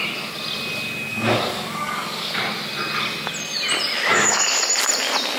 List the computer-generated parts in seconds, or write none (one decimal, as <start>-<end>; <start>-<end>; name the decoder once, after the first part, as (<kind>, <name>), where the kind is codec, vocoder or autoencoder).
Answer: 1.1-2.4 (codec, DAC); 4.1-4.6